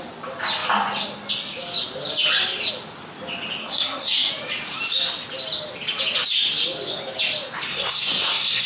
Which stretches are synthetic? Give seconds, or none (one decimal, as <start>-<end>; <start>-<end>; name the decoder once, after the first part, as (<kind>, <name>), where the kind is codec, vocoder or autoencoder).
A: 3.6-4.3 (codec, SNAC); 7.7-8.7